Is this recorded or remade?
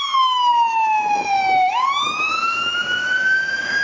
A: remade